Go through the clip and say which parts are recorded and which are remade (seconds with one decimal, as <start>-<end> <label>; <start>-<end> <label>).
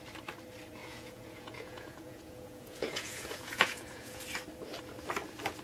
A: 0.0-0.8 recorded; 0.8-4.2 remade; 4.2-5.6 recorded